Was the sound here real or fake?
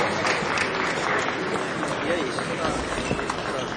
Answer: real